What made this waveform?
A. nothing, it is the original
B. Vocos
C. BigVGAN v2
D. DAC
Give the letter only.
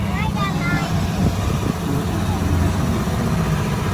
A